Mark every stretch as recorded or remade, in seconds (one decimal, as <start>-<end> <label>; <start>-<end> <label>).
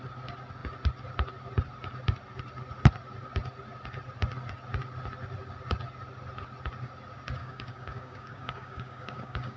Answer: 0.0-7.4 recorded; 7.4-9.6 remade